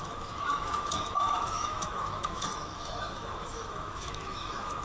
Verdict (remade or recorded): remade